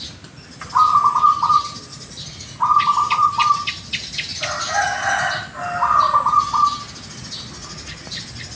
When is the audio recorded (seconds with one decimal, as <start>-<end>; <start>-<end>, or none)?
0.0-1.9; 2.6-7.6; 8.2-8.6